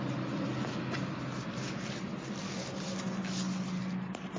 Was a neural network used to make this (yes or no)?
no